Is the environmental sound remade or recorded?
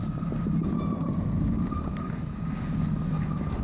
recorded